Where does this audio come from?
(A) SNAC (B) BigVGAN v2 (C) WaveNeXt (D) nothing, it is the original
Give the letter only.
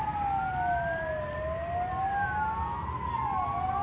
D